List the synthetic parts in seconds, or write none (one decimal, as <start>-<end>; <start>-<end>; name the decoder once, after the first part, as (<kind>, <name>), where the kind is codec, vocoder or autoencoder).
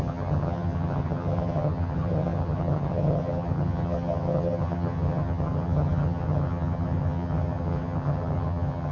0.0-8.9 (vocoder, HiFi-GAN)